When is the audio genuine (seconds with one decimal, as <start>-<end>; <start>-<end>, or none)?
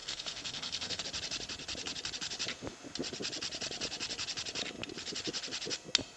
1.0-6.2